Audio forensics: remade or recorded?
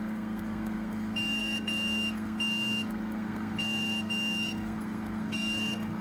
remade